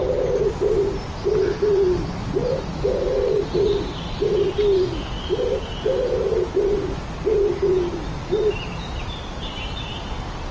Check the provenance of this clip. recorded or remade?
recorded